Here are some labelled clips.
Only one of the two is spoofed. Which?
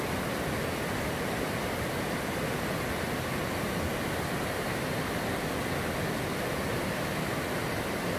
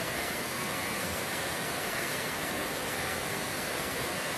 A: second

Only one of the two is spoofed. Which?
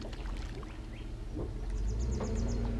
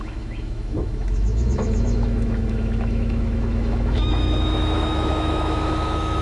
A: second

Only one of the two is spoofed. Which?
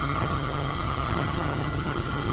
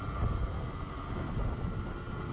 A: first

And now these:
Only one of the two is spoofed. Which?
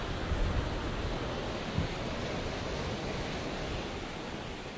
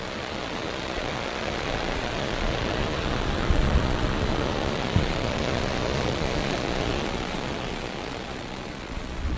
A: second